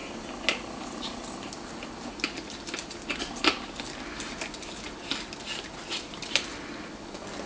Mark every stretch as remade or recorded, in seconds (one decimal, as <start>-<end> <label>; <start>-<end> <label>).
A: 0.0-7.5 recorded